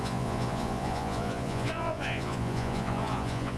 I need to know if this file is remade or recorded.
remade